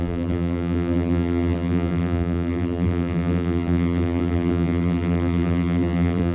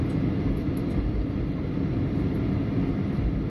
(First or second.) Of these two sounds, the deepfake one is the first